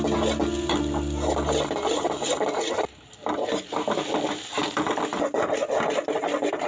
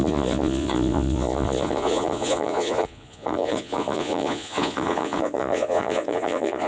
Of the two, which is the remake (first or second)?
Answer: second